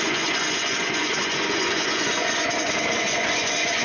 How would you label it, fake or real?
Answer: fake